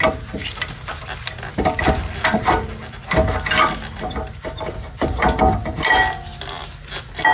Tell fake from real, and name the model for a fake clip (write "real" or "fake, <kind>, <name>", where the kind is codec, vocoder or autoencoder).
real